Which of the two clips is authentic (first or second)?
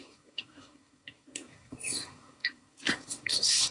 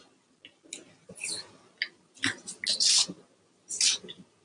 second